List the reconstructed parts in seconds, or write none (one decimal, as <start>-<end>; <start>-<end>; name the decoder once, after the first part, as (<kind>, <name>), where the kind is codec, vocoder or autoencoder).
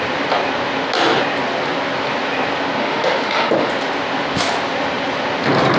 2.8-3.7 (autoencoder, DAC-VAE)